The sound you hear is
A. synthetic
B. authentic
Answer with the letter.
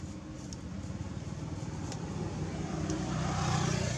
B